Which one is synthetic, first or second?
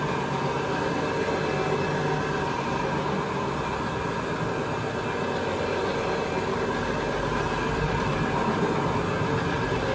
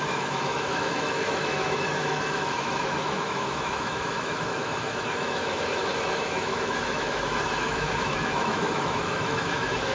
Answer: second